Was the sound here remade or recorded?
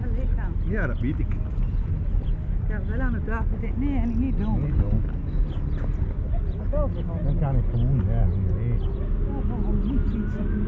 recorded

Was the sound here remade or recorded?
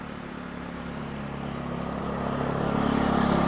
recorded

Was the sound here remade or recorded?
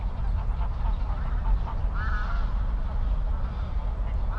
recorded